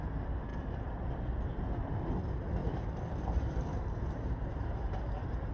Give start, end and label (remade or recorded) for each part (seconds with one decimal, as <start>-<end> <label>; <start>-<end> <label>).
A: 0.0-2.6 recorded; 2.6-5.5 remade